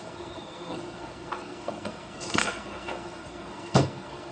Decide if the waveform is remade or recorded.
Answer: remade